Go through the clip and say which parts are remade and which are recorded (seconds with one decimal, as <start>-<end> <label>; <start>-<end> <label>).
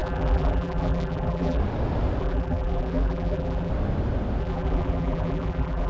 0.0-1.6 remade; 1.6-2.2 recorded; 2.2-3.7 remade; 3.7-4.4 recorded; 4.4-5.9 remade